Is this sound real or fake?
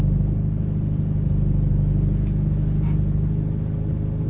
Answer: real